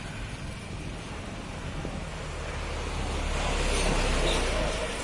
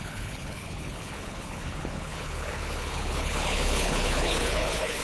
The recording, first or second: first